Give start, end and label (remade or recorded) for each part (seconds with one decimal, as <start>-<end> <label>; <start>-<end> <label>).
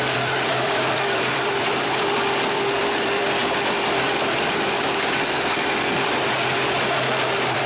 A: 0.0-7.7 remade